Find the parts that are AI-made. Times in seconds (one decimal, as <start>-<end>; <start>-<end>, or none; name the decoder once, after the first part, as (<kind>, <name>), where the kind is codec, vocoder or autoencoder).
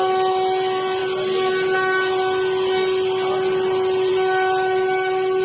none